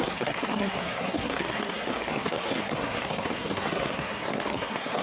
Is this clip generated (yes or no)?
yes